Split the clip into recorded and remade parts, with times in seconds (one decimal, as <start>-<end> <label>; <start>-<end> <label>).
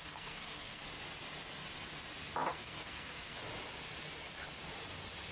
0.0-0.8 remade; 0.8-2.5 recorded; 2.5-3.4 remade; 3.4-5.3 recorded